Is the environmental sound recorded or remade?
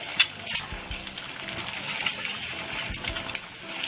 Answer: recorded